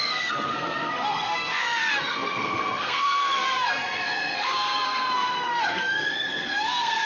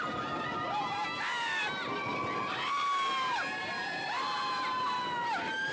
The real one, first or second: second